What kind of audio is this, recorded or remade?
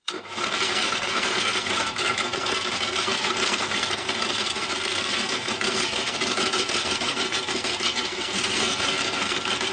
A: remade